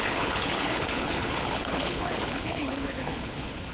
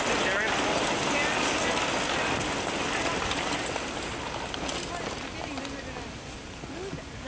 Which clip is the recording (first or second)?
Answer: second